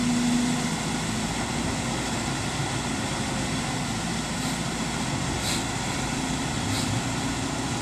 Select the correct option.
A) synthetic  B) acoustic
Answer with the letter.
B